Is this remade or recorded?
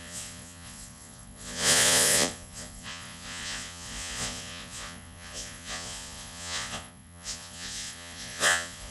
remade